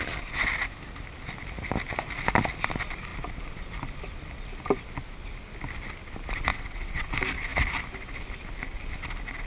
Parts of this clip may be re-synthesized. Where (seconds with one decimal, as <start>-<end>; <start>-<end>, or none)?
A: 6.5-7.1